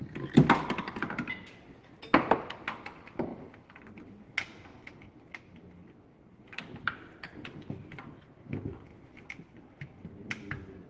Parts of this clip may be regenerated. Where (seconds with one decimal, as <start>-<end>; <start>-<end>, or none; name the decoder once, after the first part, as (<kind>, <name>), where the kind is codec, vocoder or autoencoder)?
8.9-10.9 (vocoder, BigVGAN v2)